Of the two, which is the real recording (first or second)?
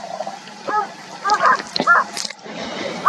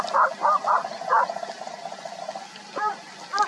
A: second